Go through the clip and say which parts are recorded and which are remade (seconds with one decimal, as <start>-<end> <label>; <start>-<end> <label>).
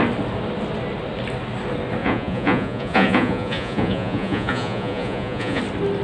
0.0-2.0 recorded; 2.0-5.6 remade; 5.6-6.0 recorded